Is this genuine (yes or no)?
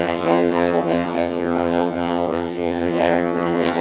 no